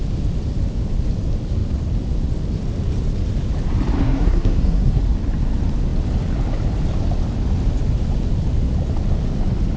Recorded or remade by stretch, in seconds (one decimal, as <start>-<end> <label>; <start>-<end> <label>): 0.0-4.0 recorded; 4.0-5.0 remade; 5.0-9.8 recorded